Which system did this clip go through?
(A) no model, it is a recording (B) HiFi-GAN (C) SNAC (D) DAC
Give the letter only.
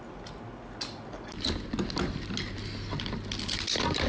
A